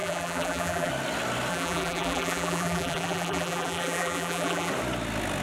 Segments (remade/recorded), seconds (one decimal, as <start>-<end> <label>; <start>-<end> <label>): 0.0-0.9 remade; 0.9-1.5 recorded; 1.5-4.7 remade; 4.7-5.4 recorded